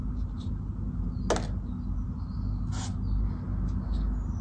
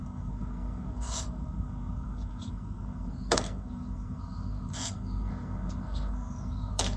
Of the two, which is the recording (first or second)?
first